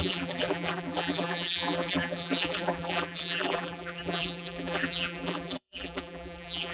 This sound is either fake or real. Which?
fake